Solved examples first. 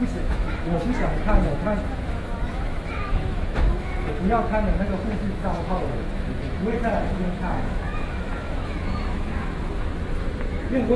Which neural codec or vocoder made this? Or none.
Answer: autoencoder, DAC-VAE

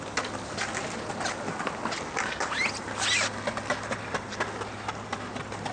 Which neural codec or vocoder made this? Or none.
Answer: none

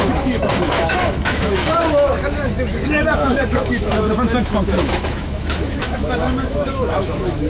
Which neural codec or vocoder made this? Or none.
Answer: autoencoder, DAC-VAE